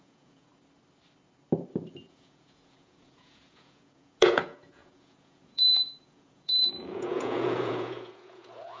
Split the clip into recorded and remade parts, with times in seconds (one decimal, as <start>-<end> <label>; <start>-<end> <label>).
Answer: 0.0-0.5 remade; 0.5-2.0 recorded; 2.0-8.8 remade